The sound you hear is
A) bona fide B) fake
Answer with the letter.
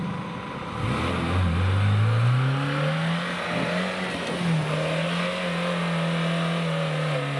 A